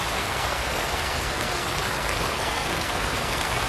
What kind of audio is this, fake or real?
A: fake